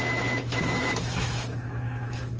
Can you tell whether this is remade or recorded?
remade